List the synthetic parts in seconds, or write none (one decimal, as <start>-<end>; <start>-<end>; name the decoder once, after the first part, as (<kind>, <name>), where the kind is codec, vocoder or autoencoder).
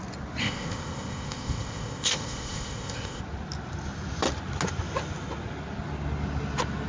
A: 0.4-3.2 (codec, ZipCodec)